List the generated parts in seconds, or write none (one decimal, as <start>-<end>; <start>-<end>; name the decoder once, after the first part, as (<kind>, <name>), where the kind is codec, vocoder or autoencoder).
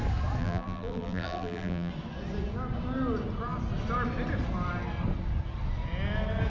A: 0.4-1.9 (vocoder, BigVGAN v2)